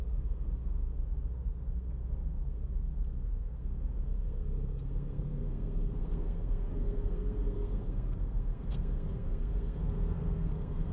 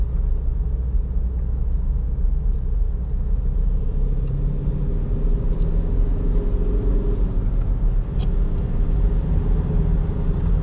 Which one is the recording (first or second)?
second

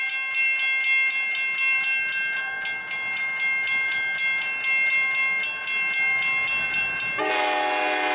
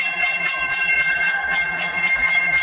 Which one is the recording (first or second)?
first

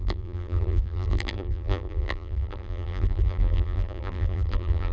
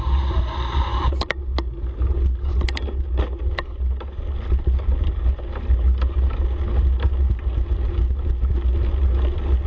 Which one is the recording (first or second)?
second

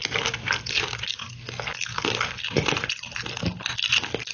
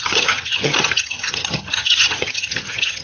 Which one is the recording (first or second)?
first